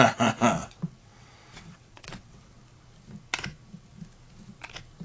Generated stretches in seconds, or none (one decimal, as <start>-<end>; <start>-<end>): 0.6-2.6